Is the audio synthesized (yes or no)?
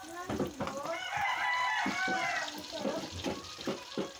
no